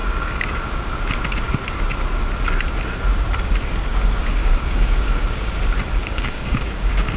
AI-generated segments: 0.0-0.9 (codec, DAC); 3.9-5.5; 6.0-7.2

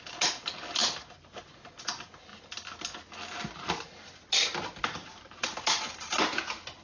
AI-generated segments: 0.8-1.8 (vocoder, BigVGAN v2); 5.0-5.8

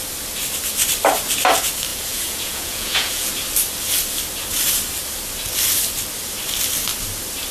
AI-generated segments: 1.9-3.3 (vocoder, Vocos)

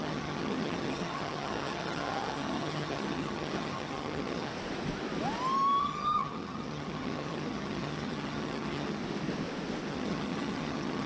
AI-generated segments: 0.0-4.5 (vocoder, HiFi-GAN); 5.8-9.0; 9.9-11.1

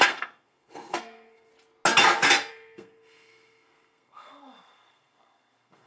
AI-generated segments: 0.0-1.5 (codec, SNAC); 2.5-5.9

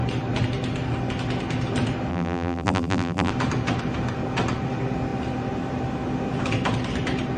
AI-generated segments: 2.1-3.3 (vocoder, BigVGAN v2)

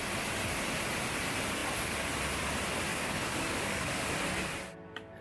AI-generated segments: 2.9-4.1 (codec, DAC)

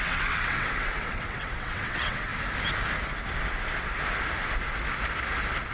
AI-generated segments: 0.0-2.3 (vocoder, WaveNeXt)